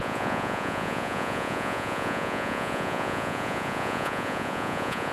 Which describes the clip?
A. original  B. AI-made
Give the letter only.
B